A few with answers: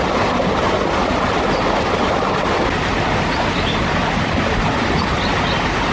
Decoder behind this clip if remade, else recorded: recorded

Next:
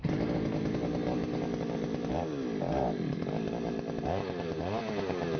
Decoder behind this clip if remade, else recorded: recorded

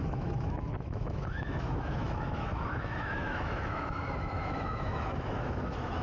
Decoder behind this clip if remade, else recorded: remade, autoencoder, DAC-VAE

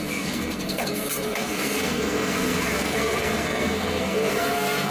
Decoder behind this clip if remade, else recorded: remade, codec, SNAC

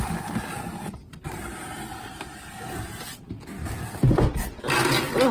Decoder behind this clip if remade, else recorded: recorded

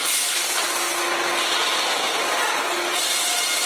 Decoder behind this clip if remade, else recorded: recorded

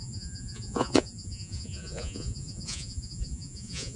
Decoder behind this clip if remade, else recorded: remade, vocoder, Vocos